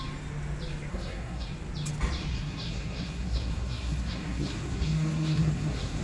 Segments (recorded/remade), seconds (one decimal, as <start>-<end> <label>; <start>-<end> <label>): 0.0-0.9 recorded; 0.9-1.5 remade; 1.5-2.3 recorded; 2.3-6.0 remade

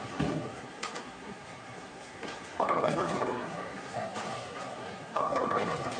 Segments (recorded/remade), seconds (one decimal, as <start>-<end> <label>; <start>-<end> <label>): 0.0-6.0 remade

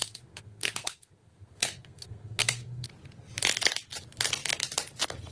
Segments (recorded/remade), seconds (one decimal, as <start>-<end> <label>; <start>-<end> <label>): 0.0-2.9 remade; 2.9-5.3 recorded